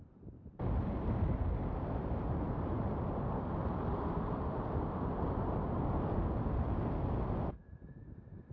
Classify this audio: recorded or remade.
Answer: recorded